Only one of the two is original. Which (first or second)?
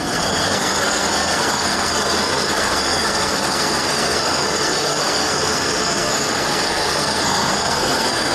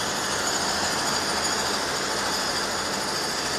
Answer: second